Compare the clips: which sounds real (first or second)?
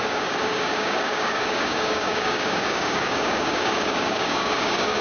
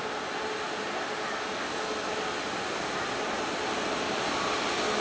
second